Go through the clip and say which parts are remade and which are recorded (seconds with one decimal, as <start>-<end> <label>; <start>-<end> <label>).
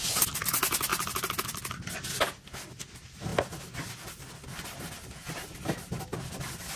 0.0-6.8 recorded